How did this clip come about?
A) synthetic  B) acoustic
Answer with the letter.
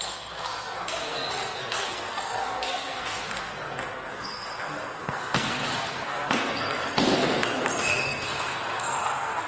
A